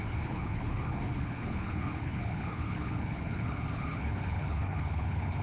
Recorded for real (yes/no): no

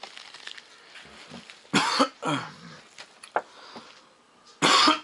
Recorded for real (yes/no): yes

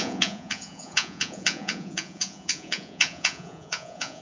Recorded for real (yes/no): no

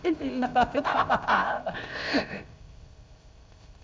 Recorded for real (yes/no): no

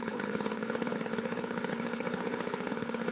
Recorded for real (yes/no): no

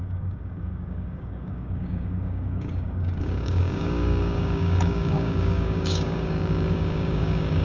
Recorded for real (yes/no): no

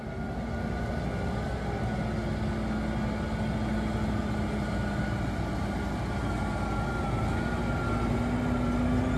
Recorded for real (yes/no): yes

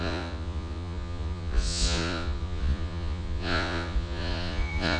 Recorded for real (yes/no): no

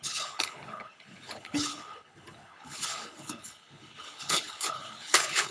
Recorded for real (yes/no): no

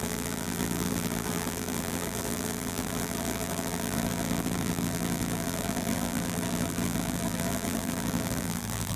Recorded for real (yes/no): no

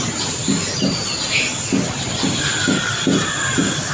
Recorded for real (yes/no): yes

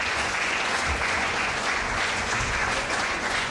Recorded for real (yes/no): no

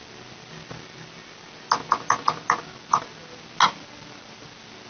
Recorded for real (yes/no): yes